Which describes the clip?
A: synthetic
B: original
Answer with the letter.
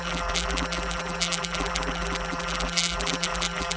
A